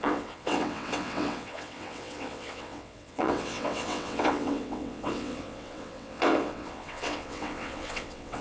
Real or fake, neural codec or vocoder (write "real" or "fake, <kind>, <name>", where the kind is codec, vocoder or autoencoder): fake, vocoder, WaveNeXt